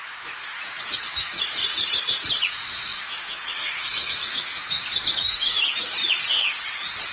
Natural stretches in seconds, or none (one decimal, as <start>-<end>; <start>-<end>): 1.6-2.5; 6.0-7.1